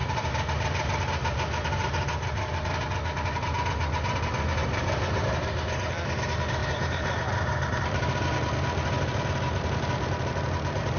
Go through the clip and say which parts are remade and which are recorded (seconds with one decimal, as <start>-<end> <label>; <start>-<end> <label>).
0.0-2.7 remade; 2.7-4.6 recorded; 4.6-5.4 remade; 5.4-6.6 recorded; 6.6-8.0 remade; 8.0-11.0 recorded